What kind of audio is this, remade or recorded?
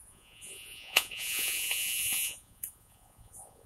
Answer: remade